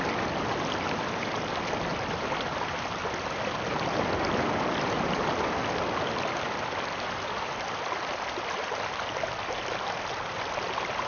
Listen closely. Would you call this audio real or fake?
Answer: real